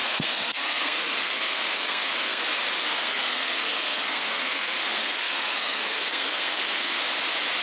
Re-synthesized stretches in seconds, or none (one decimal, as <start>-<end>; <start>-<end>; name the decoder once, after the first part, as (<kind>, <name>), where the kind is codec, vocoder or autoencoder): 0.0-2.4 (codec, SNAC); 2.8-7.0